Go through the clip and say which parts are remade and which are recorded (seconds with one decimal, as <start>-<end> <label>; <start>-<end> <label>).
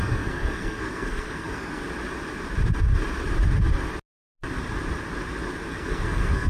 0.0-1.8 remade; 1.8-5.7 recorded; 5.7-6.5 remade